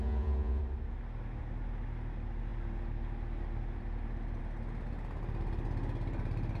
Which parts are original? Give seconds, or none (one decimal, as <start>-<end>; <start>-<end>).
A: 0.6-6.6